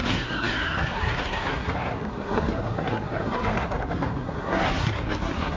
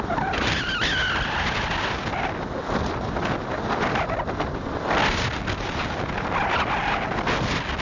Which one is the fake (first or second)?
first